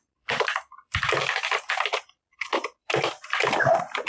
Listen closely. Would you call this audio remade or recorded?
remade